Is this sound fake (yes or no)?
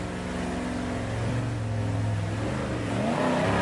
no